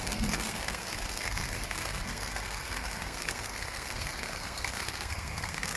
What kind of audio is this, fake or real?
fake